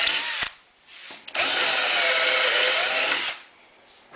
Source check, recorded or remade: recorded